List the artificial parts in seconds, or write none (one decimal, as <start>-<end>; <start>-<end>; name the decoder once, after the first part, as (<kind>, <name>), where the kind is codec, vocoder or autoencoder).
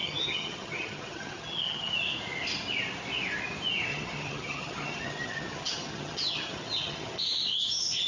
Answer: 0.0-1.9 (vocoder, HiFi-GAN); 3.9-7.2